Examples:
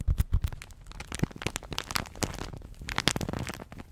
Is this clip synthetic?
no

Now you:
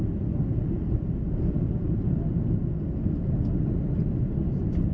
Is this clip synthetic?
no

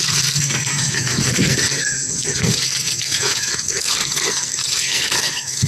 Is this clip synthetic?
yes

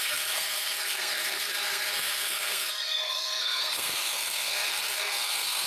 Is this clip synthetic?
yes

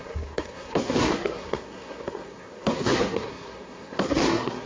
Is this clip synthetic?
yes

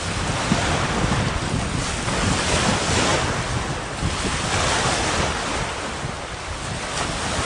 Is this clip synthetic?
no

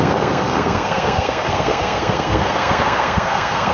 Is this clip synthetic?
yes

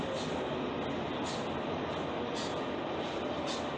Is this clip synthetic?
no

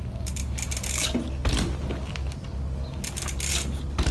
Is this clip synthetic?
no